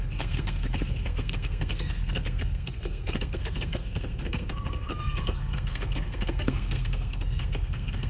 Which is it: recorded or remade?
remade